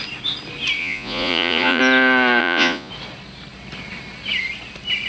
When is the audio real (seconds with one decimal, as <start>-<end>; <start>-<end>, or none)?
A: 0.0-0.8; 1.8-2.4; 2.9-5.1